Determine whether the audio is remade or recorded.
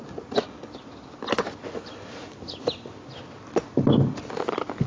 recorded